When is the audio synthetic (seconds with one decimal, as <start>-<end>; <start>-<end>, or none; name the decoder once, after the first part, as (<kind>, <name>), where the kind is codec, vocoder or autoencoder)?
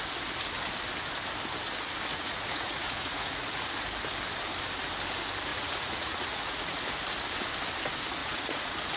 2.1-3.7 (vocoder, Vocos); 5.5-6.8; 8.2-9.0